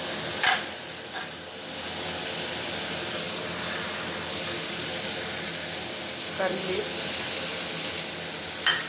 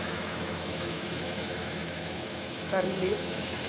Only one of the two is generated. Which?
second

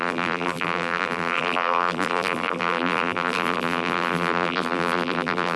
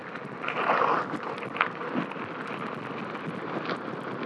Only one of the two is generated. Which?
first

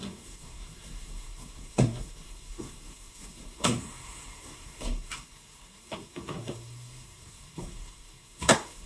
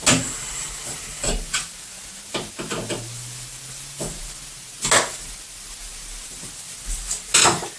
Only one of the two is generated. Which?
first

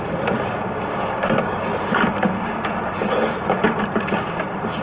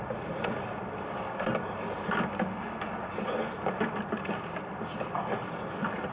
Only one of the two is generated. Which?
first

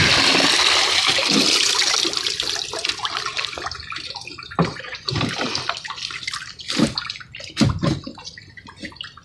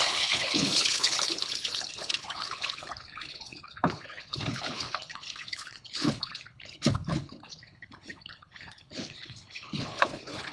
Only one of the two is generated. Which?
second